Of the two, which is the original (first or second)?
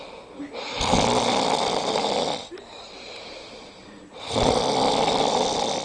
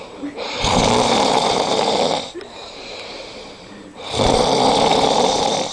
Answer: first